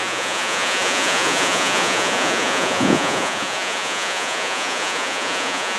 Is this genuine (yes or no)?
no